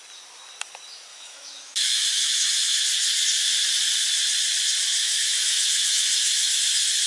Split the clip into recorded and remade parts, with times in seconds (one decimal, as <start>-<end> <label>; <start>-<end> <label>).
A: 0.0-1.1 recorded; 1.1-2.8 remade; 2.8-5.0 recorded; 5.0-6.6 remade; 6.6-7.1 recorded